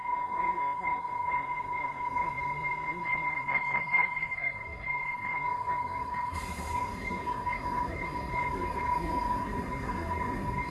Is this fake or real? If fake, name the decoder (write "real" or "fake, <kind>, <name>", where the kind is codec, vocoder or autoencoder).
fake, codec, SNAC